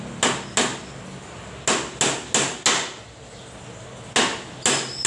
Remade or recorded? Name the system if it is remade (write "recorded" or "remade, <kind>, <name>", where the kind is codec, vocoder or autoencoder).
recorded